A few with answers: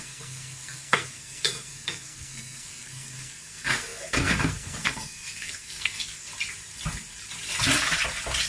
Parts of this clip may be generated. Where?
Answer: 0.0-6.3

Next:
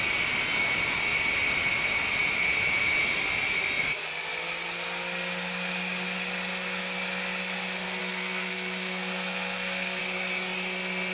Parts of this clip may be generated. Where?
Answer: 8.0-10.0

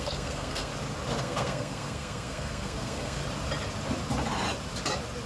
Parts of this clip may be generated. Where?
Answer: 0.0-0.7; 1.2-3.2

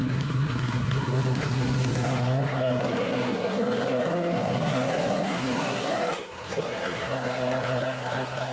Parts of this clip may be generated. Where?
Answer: 0.0-8.5

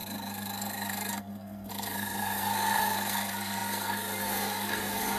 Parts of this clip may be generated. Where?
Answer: 0.0-5.2

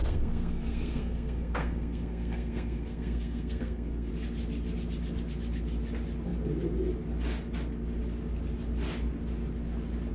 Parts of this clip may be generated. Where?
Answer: 0.0-4.1

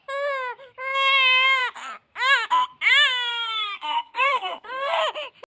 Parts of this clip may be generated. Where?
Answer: 3.3-5.0